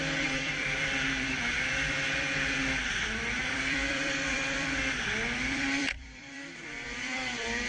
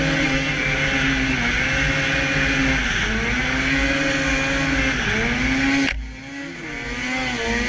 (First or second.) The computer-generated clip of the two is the first